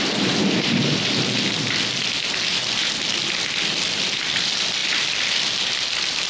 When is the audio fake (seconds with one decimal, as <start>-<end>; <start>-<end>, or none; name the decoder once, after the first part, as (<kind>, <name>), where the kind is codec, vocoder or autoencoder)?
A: none